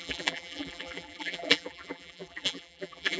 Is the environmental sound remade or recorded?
remade